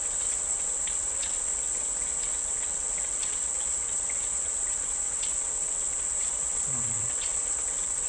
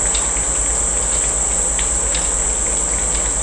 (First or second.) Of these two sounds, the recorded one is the second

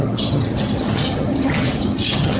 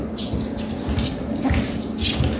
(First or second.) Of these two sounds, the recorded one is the second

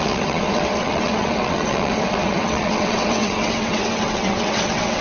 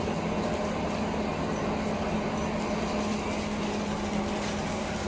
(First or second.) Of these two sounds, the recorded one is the second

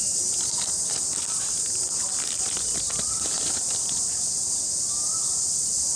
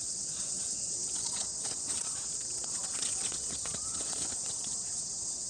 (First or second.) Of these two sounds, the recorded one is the first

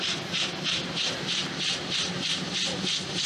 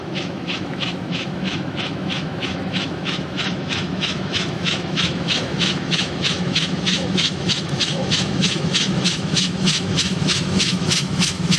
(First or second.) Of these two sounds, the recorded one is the first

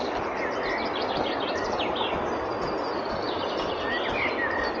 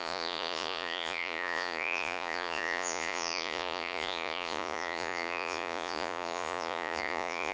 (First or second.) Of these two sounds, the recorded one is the first